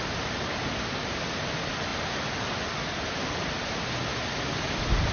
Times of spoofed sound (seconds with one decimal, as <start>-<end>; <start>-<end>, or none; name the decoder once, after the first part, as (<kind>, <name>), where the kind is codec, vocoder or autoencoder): none